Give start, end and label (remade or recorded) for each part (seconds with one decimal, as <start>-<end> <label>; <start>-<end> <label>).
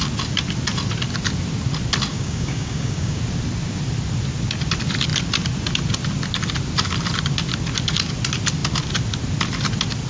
0.0-2.1 recorded; 2.1-3.2 remade; 3.2-10.1 recorded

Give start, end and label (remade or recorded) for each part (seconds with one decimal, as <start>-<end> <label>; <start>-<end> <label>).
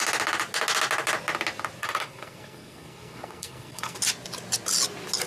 0.0-1.8 recorded; 1.8-4.0 remade; 4.0-5.3 recorded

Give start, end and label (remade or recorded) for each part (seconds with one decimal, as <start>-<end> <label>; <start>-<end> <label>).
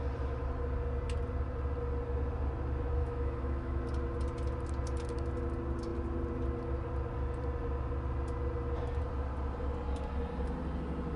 0.0-3.0 recorded; 3.0-3.8 remade; 3.8-11.2 recorded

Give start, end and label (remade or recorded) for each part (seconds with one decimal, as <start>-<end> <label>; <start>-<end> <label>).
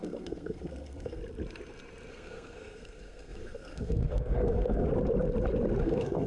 0.0-1.2 remade; 1.2-2.1 recorded; 2.1-4.9 remade; 4.9-5.8 recorded; 5.8-6.3 remade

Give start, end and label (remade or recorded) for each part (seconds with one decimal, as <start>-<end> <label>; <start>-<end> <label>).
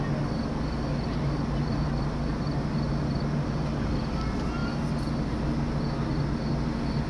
0.0-1.1 recorded; 1.1-4.0 remade; 4.0-7.1 recorded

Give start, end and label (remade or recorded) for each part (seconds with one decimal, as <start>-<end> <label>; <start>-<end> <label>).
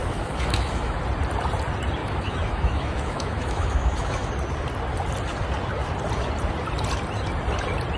0.0-1.0 remade; 1.0-2.0 recorded; 2.0-4.3 remade; 4.3-8.0 recorded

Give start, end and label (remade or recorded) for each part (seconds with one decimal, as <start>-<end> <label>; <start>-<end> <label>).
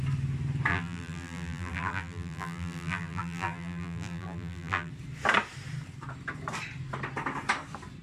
0.0-0.7 recorded; 0.7-4.9 remade; 4.9-8.0 recorded